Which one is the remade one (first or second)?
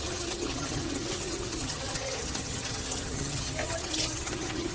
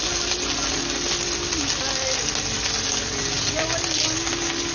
first